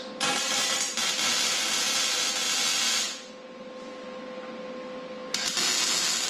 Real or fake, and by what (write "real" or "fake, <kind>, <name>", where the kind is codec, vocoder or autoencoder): real